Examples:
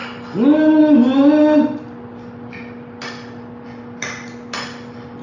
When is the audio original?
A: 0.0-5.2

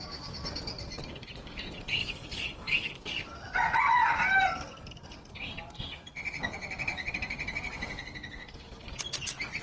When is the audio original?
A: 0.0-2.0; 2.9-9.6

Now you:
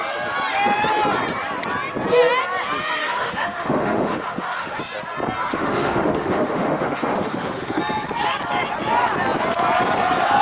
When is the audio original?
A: 0.0-3.0; 4.8-5.5; 7.8-10.4

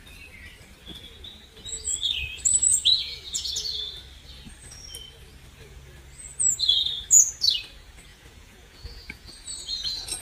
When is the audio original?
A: 0.0-2.7; 3.5-8.1; 9.3-10.2

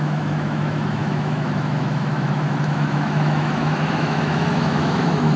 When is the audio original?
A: none